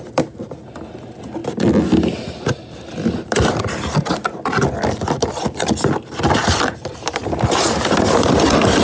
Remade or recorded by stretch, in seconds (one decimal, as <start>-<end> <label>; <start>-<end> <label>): 0.0-8.8 recorded